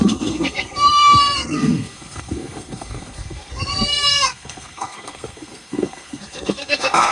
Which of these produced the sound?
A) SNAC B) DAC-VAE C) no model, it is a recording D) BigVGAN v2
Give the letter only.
A